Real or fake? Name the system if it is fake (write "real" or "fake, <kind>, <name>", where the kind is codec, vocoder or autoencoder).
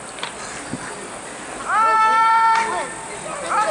real